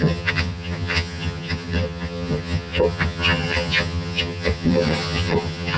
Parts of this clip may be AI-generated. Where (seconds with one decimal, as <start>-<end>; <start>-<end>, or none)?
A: 0.0-5.8